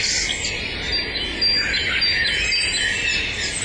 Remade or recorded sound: recorded